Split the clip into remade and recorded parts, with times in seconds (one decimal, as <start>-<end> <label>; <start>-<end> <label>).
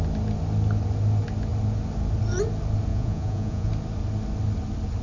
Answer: 0.0-2.9 recorded; 2.9-3.7 remade; 3.7-5.0 recorded